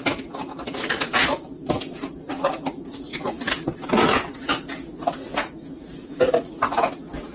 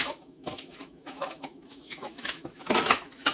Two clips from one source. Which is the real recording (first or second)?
first